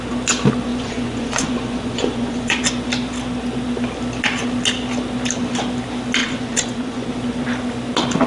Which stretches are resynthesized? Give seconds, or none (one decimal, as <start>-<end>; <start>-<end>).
0.7-2.6; 6.2-7.1